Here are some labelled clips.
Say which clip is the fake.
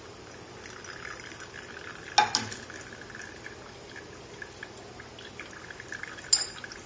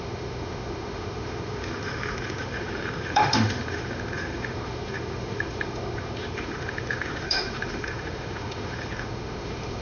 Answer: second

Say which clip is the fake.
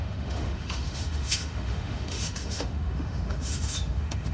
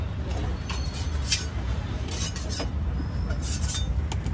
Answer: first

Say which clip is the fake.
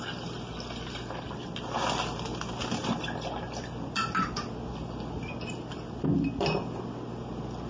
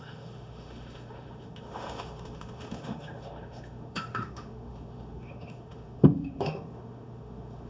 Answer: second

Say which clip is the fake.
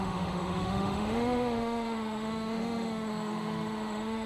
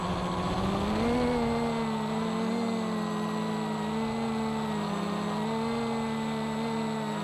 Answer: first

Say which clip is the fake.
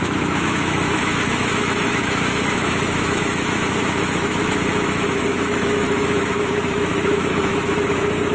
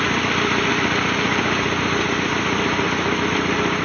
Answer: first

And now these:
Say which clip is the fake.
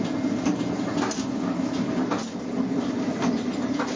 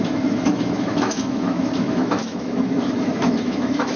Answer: second